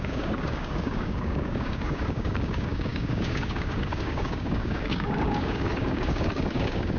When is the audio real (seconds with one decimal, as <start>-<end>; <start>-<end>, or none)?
none